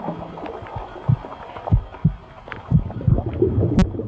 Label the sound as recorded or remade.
recorded